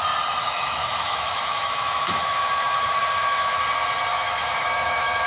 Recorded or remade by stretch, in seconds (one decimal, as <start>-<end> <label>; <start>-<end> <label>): 0.0-0.4 recorded; 0.4-3.6 remade; 3.6-4.1 recorded; 4.1-5.3 remade